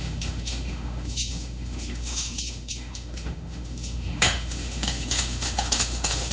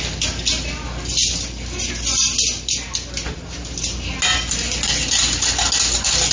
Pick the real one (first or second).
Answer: second